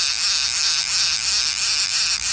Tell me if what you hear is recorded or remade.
recorded